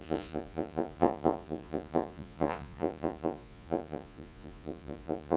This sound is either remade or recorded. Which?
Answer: remade